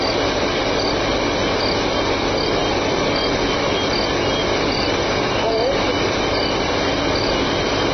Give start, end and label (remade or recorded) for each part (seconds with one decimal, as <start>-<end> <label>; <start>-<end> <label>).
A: 0.0-7.9 recorded